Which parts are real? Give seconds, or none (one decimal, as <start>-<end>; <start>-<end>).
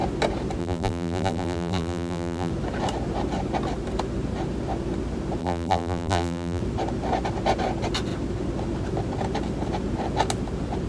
0.0-0.6; 2.5-5.4; 6.6-10.9